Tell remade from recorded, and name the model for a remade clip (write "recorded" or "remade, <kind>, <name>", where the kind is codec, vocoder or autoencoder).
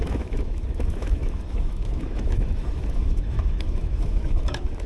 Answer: remade, autoencoder, DAC-VAE